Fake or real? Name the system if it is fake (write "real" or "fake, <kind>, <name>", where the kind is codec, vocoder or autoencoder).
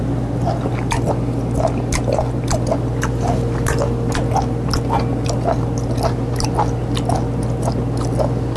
real